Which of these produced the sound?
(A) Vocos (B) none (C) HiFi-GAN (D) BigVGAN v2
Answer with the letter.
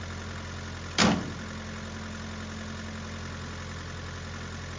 B